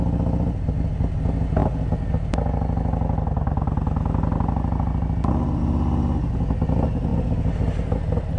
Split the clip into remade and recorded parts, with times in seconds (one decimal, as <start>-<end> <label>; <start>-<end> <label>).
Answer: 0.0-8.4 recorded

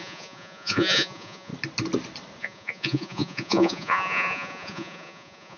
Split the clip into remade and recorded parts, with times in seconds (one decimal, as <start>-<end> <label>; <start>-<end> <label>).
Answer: 0.0-1.5 remade; 1.5-2.4 recorded; 2.4-5.6 remade

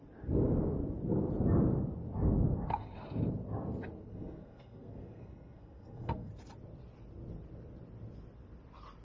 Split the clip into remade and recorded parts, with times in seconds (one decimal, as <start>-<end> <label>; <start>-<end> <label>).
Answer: 0.0-4.1 recorded; 4.1-6.3 remade; 6.3-9.0 recorded

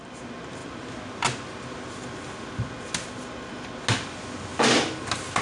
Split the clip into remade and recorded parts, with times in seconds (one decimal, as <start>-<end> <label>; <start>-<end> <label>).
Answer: 0.0-5.4 recorded

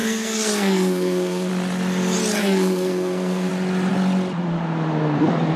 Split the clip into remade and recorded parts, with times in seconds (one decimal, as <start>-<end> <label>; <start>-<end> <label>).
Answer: 0.0-1.5 remade; 1.5-2.4 recorded; 2.4-3.5 remade; 3.5-5.6 recorded

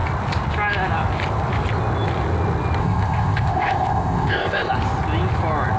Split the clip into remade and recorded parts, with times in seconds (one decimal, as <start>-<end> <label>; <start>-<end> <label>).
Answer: 0.0-2.8 recorded; 2.8-4.7 remade; 4.7-5.8 recorded

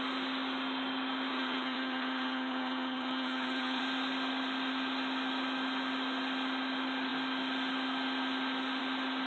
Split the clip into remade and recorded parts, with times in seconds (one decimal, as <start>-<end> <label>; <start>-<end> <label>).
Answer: 0.0-1.3 recorded; 1.3-3.8 remade; 3.8-9.3 recorded